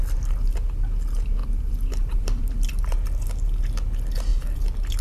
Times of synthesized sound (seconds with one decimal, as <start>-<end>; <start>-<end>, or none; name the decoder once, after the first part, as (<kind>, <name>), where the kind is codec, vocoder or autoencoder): 1.4-2.2 (vocoder, BigVGAN v2); 4.3-5.0